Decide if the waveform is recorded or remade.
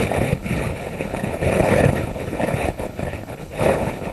remade